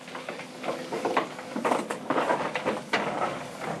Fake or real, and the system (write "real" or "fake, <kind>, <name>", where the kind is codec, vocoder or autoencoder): fake, codec, DAC